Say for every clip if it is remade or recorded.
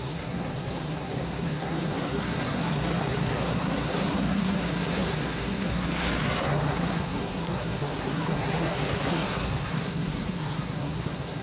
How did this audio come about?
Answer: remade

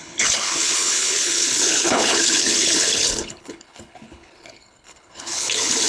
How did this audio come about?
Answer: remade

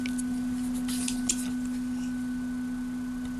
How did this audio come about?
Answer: recorded